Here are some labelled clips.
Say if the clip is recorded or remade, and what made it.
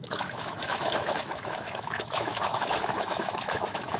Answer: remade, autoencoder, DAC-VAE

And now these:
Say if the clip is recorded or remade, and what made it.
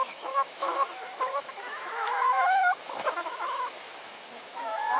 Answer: remade, autoencoder, DAC-VAE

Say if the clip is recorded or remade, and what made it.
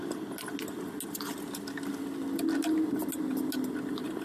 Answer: recorded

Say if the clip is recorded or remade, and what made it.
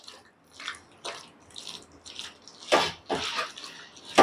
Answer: recorded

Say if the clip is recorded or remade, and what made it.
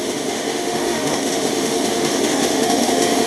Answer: remade, autoencoder, DAC-VAE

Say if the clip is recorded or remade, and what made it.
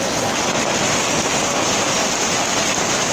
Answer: recorded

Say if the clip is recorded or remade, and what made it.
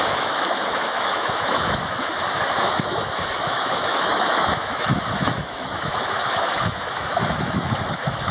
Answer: remade, autoencoder, DAC-VAE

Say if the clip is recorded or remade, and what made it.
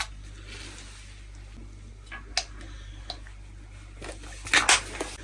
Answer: recorded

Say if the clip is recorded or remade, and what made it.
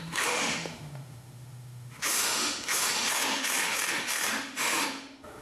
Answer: remade, autoencoder, DAC-VAE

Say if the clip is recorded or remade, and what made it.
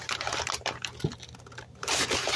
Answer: recorded